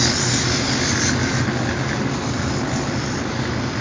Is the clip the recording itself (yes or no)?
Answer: no